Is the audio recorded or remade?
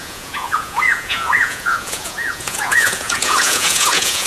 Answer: remade